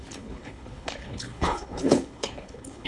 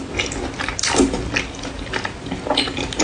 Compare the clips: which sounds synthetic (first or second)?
first